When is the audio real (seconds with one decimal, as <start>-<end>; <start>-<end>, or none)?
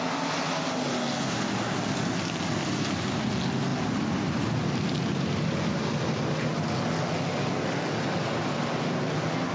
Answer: 0.0-9.5